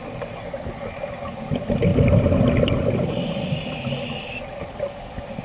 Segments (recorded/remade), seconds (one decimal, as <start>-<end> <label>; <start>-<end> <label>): 0.0-5.4 recorded

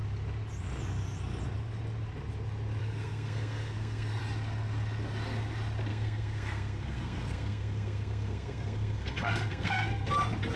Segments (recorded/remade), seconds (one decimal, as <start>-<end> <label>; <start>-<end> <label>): 0.0-2.8 recorded; 2.8-4.2 remade; 4.2-5.9 recorded; 5.9-10.1 remade; 10.1-10.6 recorded